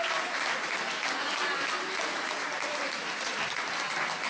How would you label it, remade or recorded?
recorded